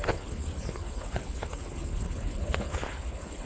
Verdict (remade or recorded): remade